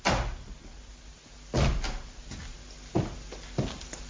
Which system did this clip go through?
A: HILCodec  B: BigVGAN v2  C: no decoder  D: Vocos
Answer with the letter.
C